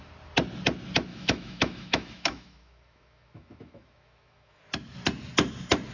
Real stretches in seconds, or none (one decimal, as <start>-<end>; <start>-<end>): 0.0-1.1; 4.6-5.9